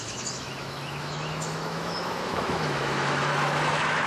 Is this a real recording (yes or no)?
no